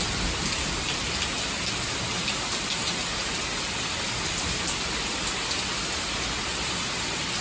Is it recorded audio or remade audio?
recorded